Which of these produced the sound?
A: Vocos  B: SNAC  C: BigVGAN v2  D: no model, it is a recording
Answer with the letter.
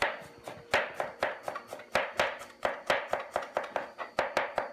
D